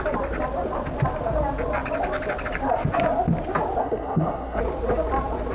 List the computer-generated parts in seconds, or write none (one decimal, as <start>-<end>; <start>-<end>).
3.8-4.6